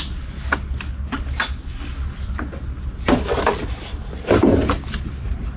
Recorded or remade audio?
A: recorded